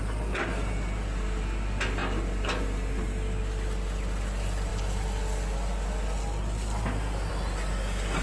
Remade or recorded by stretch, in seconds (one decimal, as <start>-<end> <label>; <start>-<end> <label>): 0.0-8.2 recorded